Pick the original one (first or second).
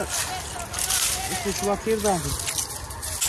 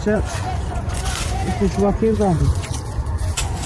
first